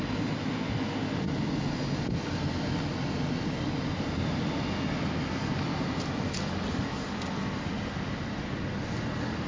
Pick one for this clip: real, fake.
real